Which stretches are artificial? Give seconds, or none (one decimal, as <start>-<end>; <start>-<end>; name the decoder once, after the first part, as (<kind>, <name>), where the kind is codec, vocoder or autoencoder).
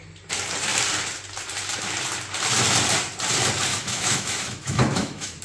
3.7-5.4 (autoencoder, DAC-VAE)